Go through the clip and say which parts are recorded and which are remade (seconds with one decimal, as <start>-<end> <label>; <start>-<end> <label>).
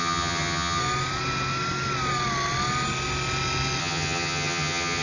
0.0-0.8 remade; 0.8-3.8 recorded; 3.8-5.0 remade